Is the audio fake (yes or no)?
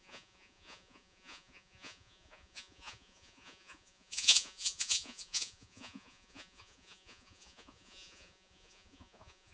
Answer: yes